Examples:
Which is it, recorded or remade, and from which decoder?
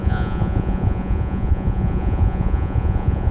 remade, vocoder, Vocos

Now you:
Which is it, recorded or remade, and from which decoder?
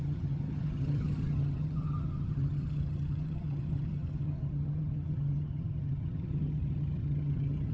remade, vocoder, HiFi-GAN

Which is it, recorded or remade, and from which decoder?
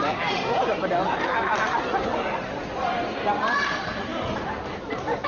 recorded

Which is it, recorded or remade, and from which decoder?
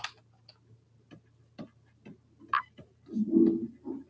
recorded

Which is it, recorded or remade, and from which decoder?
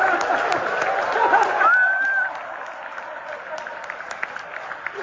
recorded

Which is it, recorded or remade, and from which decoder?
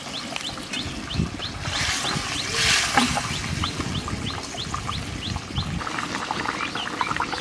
recorded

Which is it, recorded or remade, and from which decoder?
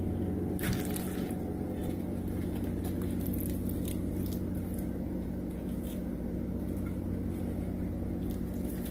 recorded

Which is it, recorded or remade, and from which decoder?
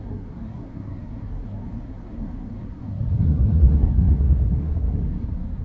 remade, codec, SNAC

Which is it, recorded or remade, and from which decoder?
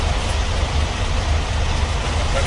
recorded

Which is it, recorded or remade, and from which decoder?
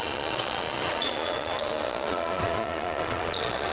remade, vocoder, Vocos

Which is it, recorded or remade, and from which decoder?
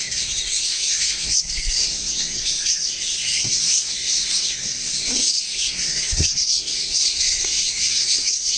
remade, codec, SNAC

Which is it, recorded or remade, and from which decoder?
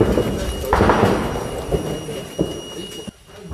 recorded